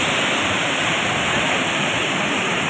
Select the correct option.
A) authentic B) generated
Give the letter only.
A